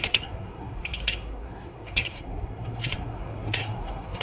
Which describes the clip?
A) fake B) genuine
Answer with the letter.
A